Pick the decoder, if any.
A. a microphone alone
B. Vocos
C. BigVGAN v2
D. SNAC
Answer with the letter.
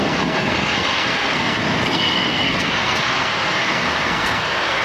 D